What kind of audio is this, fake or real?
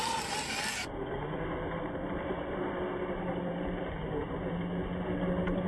real